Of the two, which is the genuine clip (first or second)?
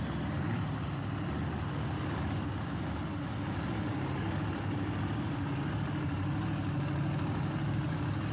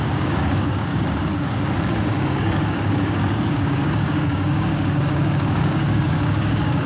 first